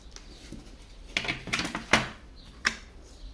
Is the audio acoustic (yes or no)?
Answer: yes